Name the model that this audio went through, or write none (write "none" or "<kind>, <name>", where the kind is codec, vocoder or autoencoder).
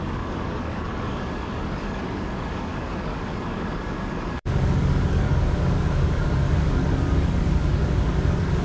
codec, DAC